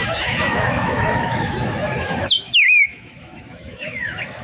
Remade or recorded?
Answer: remade